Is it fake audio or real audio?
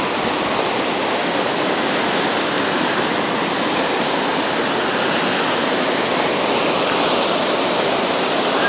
real